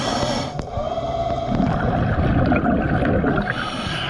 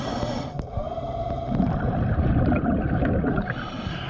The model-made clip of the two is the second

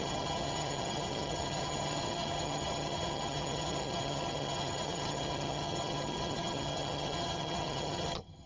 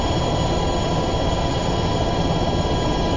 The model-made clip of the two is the first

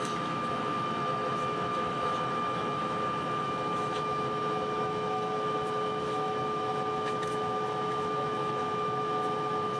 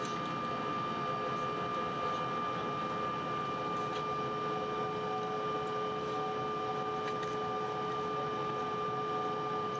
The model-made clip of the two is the first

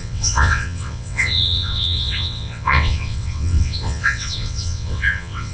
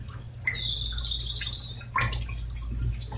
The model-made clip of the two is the first